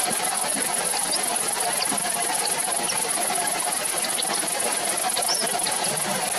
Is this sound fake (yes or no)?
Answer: no